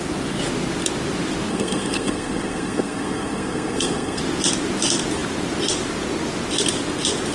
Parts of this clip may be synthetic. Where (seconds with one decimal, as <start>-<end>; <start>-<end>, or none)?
1.5-4.2